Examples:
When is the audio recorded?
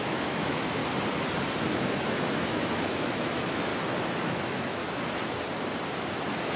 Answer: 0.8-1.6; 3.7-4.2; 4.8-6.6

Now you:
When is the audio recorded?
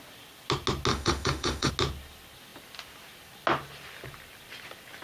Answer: 0.0-0.9; 1.7-5.0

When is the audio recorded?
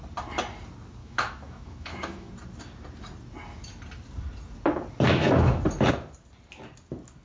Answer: 0.0-1.0; 2.3-5.1; 5.6-7.2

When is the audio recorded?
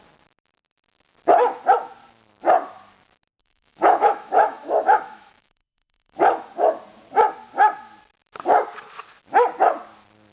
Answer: 0.0-3.4; 6.5-10.3